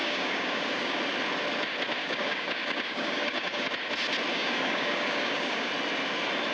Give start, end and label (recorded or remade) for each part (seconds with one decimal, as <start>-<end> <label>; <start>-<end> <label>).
0.0-1.0 remade; 1.0-2.0 recorded; 2.0-3.7 remade; 3.7-4.3 recorded; 4.3-5.7 remade; 5.7-6.5 recorded